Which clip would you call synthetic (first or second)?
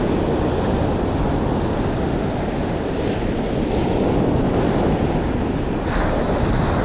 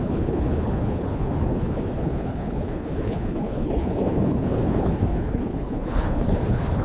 second